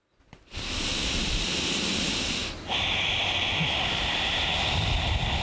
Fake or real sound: real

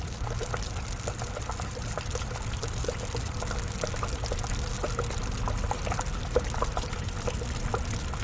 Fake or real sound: real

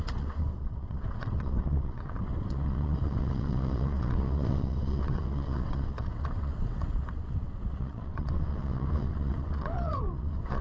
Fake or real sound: fake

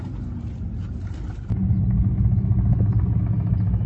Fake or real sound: real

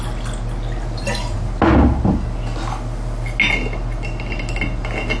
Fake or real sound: real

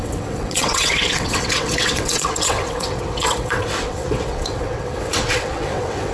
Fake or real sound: fake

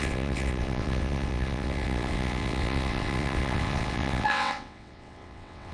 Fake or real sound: fake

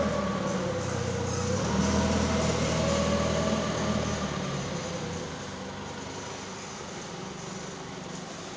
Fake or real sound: real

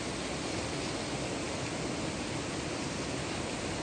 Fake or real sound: real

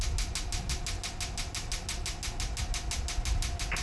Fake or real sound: real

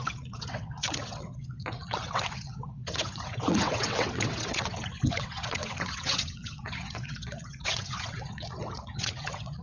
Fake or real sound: fake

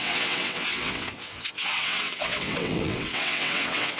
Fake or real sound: fake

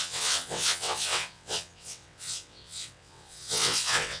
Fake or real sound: fake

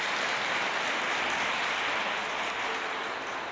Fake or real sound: real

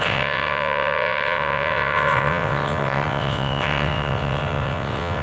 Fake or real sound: fake